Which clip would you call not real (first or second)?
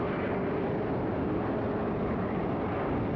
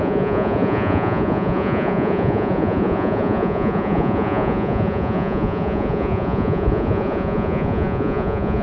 second